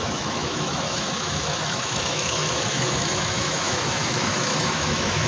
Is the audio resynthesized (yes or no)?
yes